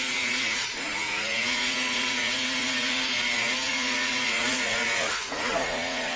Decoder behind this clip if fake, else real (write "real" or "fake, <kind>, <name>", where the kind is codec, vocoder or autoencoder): fake, vocoder, Vocos